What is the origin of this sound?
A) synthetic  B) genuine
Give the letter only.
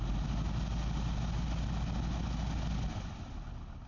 B